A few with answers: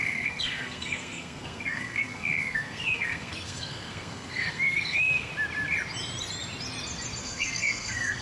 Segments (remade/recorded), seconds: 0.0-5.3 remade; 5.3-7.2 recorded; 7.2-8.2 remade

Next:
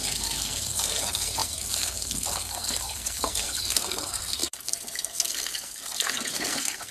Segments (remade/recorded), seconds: 0.0-6.9 remade

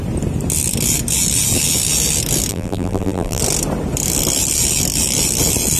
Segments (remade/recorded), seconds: 0.0-2.5 recorded; 2.5-3.4 remade; 3.4-5.8 recorded

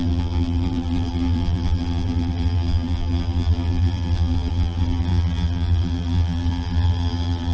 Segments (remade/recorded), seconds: 0.0-7.5 remade

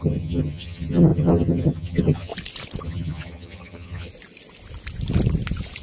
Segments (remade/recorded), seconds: 0.0-2.3 remade; 2.3-2.8 recorded; 2.8-4.1 remade; 4.1-5.8 recorded

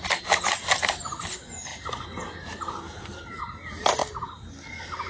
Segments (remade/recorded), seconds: 0.0-5.1 recorded